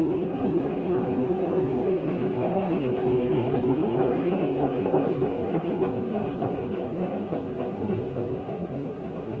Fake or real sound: fake